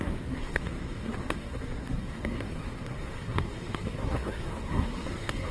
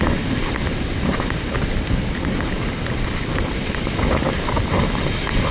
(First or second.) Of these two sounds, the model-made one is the first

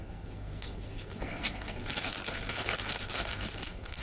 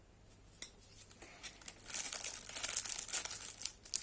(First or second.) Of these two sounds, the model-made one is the first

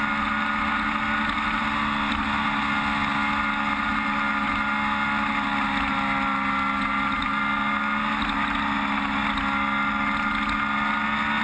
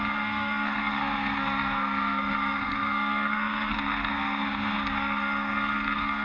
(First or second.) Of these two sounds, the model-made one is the second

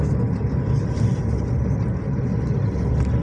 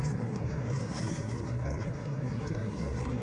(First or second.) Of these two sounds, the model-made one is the second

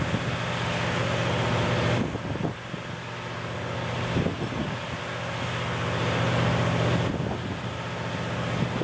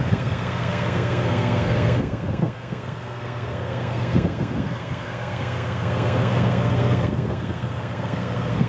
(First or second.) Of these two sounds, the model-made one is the second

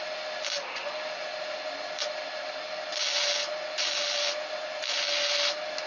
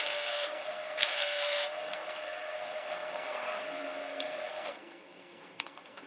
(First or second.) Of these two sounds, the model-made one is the second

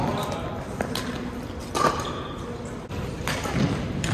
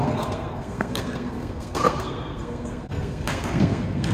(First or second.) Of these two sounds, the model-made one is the second